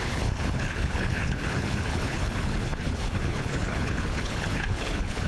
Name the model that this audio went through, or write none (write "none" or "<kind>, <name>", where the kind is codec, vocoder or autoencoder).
codec, HILCodec